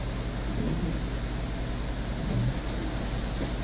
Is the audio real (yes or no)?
yes